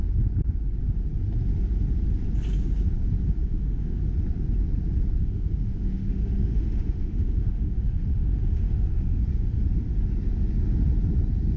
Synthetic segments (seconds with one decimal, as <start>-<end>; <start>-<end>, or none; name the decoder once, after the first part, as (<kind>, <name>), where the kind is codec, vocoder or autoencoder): 3.4-4.0 (autoencoder, DAC-VAE); 5.2-9.6